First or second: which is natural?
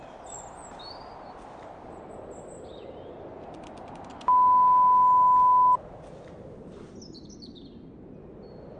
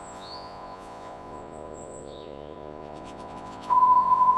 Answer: first